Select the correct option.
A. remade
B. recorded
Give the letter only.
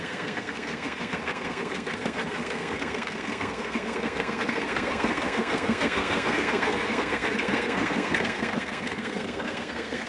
A